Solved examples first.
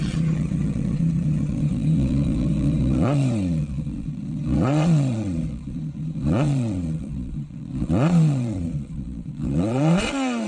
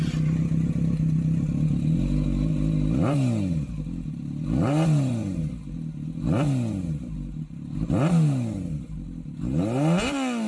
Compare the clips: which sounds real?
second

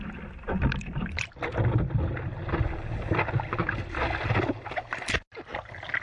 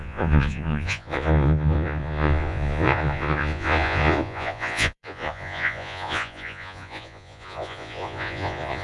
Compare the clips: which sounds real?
first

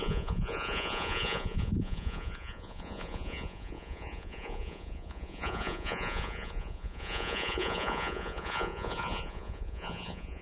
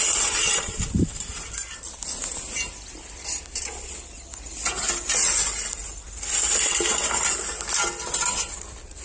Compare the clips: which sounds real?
second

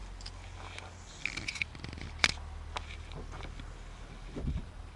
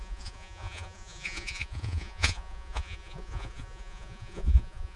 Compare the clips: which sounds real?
first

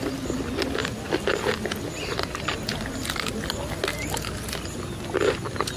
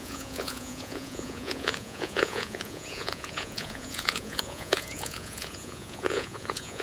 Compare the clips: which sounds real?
first